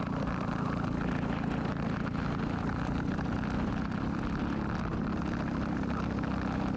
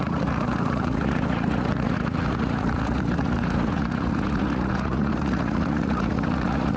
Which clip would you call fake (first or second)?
second